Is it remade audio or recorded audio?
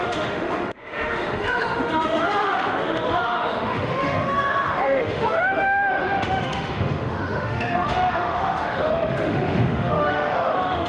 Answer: remade